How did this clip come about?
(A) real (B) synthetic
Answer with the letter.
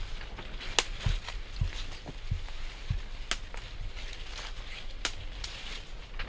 A